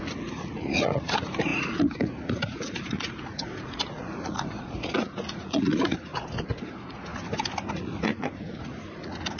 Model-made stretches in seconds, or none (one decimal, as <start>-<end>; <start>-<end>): 0.0-6.1; 6.6-7.1; 7.7-9.4